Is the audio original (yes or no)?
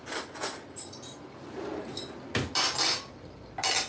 yes